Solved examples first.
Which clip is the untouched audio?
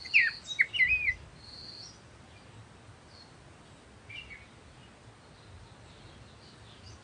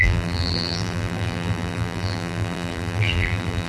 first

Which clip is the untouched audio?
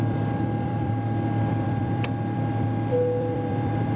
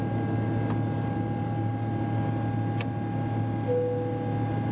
second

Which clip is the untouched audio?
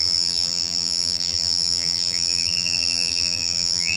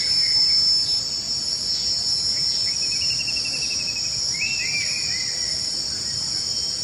second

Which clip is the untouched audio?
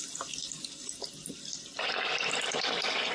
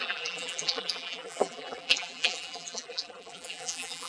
first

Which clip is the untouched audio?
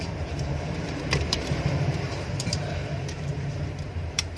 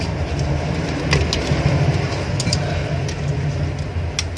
second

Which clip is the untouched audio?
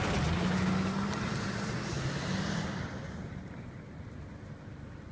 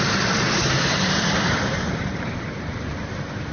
first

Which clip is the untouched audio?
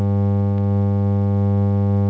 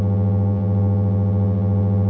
first